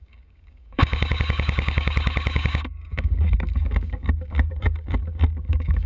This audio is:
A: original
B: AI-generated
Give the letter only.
B